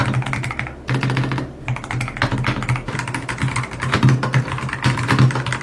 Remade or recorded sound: recorded